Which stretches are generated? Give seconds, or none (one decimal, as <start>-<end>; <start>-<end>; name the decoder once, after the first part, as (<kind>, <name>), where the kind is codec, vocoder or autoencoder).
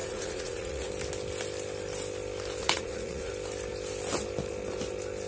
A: 0.0-0.9 (vocoder, Vocos); 2.6-3.3